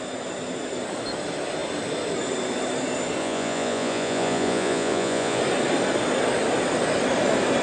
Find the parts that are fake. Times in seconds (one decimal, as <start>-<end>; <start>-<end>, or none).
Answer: 3.2-5.4